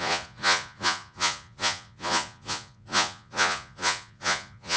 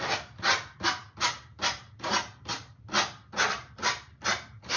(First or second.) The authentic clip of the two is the second